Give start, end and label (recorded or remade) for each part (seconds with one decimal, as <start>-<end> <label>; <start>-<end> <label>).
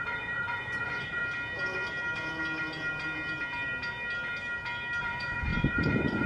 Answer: 0.0-1.2 remade; 1.2-5.0 recorded; 5.0-6.3 remade